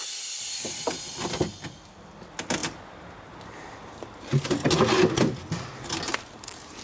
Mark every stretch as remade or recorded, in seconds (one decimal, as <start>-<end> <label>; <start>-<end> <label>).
0.0-6.8 recorded